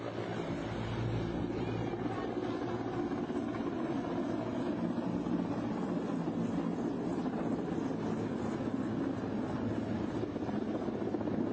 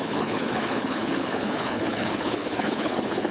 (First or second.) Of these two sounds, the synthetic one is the second